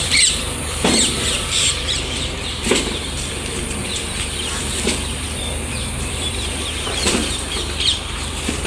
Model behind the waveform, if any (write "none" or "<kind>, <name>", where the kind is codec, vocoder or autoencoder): vocoder, BigVGAN v2